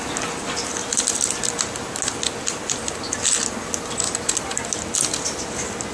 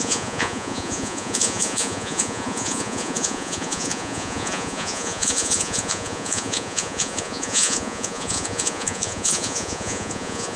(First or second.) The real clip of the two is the first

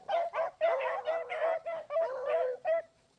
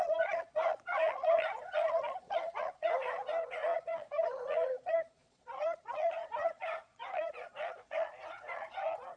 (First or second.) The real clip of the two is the first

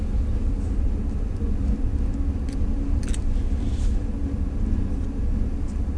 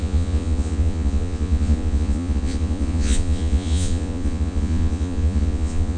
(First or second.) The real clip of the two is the first